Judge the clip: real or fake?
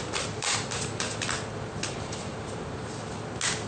real